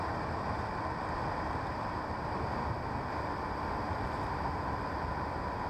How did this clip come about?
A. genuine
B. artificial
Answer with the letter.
A